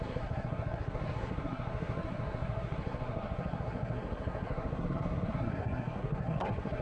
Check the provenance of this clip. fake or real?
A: fake